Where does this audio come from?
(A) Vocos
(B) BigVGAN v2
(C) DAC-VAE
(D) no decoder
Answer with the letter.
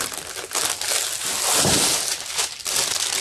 D